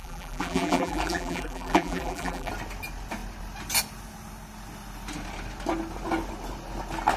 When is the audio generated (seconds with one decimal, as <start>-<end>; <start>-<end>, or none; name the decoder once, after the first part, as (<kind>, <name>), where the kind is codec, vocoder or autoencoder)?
0.0-2.5 (vocoder, BigVGAN v2)